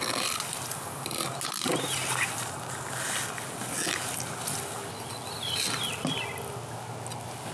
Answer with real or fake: real